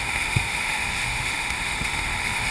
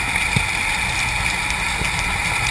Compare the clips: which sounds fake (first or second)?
first